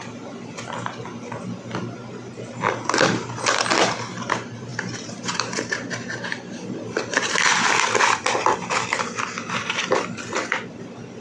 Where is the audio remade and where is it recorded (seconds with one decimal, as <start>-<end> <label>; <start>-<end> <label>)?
0.0-2.0 recorded; 2.0-3.3 remade; 3.3-4.7 recorded; 4.7-7.4 remade; 7.4-11.2 recorded